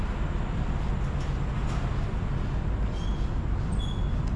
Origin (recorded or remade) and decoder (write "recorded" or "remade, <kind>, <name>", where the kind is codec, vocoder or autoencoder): recorded